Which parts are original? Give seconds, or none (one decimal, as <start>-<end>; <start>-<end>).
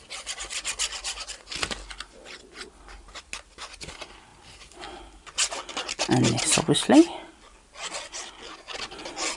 0.0-9.4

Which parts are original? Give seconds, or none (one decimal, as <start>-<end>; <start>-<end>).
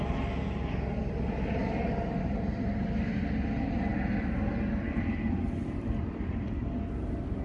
0.0-7.4